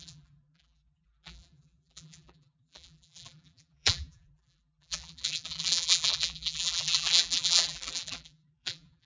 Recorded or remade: remade